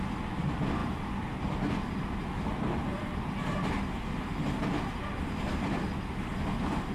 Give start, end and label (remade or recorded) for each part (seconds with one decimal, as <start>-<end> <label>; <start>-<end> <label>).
0.0-0.8 recorded; 0.8-1.6 remade; 1.6-2.9 recorded; 2.9-3.8 remade; 3.8-6.9 recorded